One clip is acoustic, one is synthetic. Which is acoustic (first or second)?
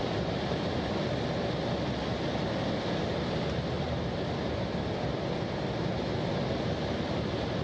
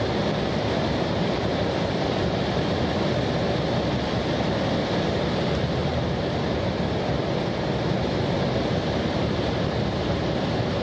first